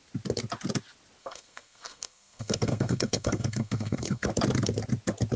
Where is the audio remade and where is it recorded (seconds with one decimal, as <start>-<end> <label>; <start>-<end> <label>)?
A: 0.0-1.2 recorded; 1.2-4.3 remade; 4.3-5.4 recorded